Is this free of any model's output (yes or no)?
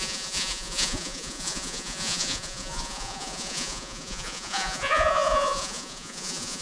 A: no